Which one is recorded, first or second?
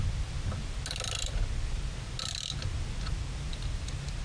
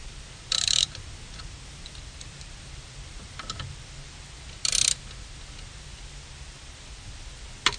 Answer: first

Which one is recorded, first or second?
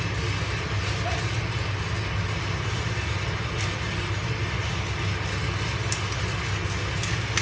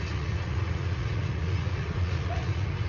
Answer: first